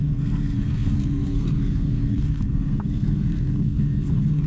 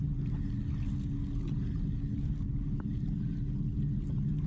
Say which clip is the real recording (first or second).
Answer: second